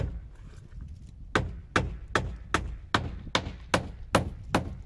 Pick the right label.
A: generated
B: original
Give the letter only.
B